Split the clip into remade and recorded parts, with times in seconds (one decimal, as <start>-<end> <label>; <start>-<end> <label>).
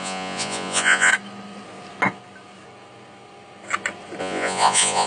0.0-1.1 remade; 1.1-4.2 recorded; 4.2-5.1 remade